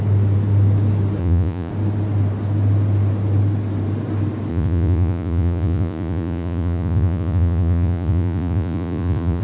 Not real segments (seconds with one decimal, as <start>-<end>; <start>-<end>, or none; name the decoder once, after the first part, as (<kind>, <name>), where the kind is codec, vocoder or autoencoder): 1.2-1.7 (vocoder, Vocos); 4.5-9.4